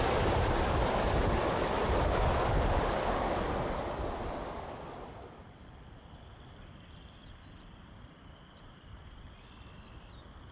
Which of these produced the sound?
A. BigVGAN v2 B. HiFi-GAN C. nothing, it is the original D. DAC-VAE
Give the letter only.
C